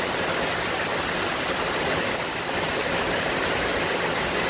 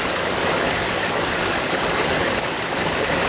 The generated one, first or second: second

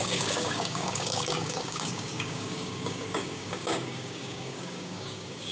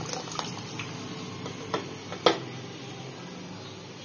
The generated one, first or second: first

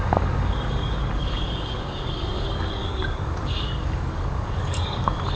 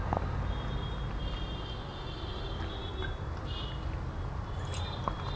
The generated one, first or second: first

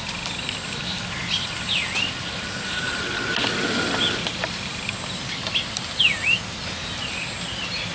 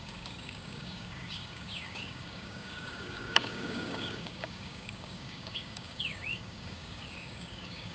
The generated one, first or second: second